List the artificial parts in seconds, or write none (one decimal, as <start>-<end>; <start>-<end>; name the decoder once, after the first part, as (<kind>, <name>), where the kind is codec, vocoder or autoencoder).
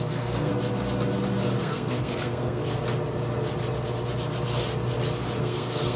0.0-0.5 (codec, SNAC); 1.6-2.6; 5.4-6.0